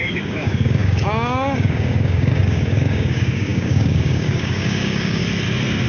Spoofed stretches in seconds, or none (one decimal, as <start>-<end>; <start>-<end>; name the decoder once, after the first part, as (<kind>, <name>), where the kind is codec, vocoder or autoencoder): 0.0-5.2 (codec, DAC)